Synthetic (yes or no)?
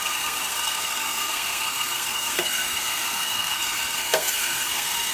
yes